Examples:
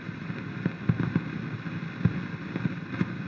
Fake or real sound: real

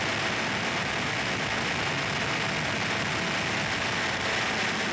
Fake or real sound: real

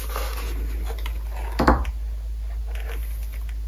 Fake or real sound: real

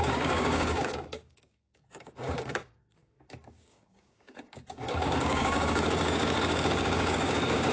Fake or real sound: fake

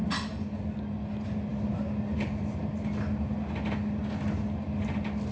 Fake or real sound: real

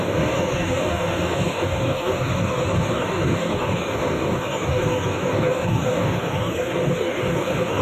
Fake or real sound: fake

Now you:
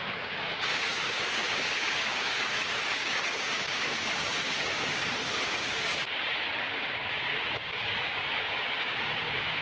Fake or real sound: fake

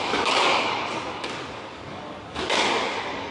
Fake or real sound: fake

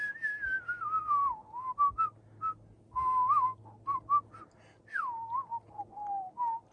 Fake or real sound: real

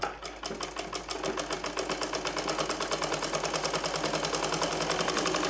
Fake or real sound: real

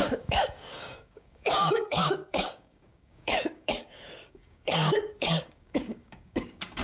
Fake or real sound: fake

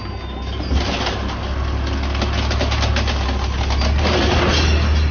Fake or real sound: real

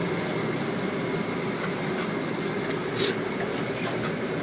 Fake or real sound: real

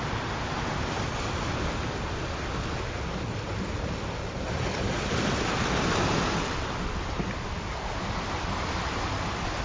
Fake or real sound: real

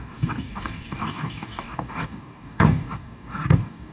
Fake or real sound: fake